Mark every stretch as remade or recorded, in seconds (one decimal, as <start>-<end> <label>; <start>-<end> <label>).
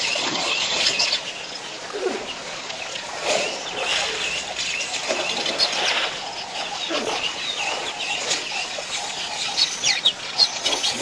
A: 0.0-3.9 remade; 3.9-5.9 recorded; 5.9-11.0 remade